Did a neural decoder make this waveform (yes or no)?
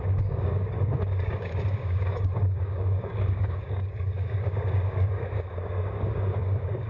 yes